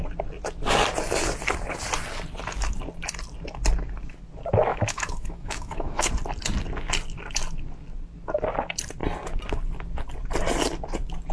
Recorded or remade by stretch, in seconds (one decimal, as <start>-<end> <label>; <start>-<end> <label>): 0.0-4.7 recorded; 4.7-6.1 remade; 6.1-11.3 recorded